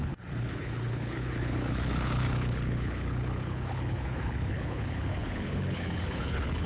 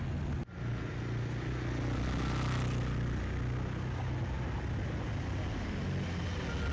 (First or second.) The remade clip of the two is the first